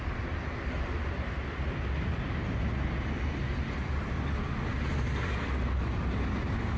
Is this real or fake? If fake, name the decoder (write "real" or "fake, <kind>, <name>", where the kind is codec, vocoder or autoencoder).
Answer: real